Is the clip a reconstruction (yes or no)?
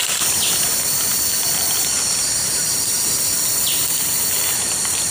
yes